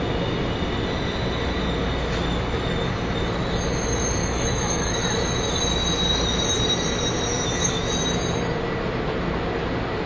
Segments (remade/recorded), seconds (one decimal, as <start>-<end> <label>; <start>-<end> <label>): 0.0-4.2 recorded; 4.2-4.9 remade; 4.9-7.3 recorded; 7.3-7.9 remade; 7.9-10.1 recorded